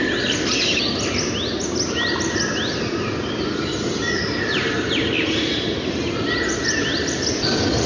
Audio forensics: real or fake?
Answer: real